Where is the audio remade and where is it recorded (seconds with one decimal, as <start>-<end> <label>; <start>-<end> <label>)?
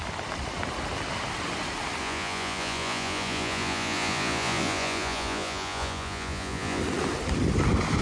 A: 0.0-2.0 recorded; 2.0-6.8 remade; 6.8-8.0 recorded